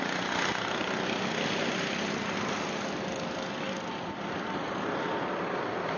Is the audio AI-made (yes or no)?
no